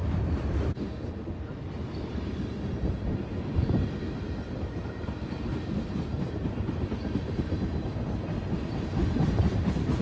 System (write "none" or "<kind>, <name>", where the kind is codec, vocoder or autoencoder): vocoder, BigVGAN v2